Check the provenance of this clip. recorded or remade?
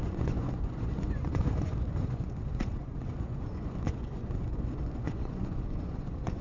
remade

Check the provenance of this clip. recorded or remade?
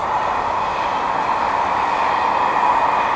recorded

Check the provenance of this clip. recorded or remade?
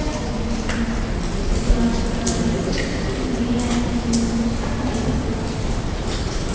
recorded